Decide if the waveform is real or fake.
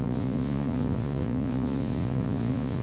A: fake